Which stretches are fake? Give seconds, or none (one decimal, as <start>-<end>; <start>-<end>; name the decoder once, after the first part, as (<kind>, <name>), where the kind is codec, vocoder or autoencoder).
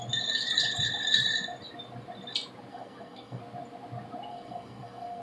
2.7-3.4 (codec, SNAC); 4.3-5.2